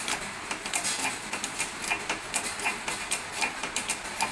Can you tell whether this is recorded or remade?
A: recorded